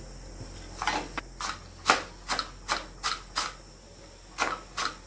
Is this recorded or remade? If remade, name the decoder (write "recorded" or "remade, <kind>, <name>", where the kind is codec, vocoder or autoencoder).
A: recorded